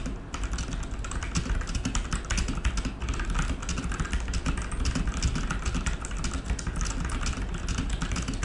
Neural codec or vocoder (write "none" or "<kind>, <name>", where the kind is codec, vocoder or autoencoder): none